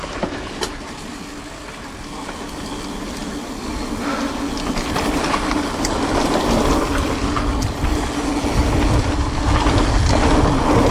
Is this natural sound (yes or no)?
yes